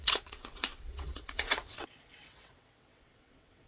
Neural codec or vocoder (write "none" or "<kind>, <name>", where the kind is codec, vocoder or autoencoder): vocoder, WaveNeXt